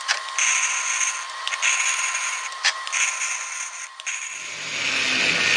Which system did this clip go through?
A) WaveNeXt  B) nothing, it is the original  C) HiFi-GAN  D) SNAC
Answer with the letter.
B